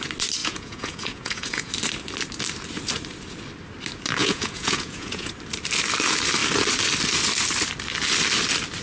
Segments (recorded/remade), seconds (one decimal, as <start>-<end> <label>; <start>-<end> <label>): 0.0-0.4 recorded; 0.4-1.7 remade; 1.7-4.2 recorded; 4.2-5.3 remade; 5.3-8.8 recorded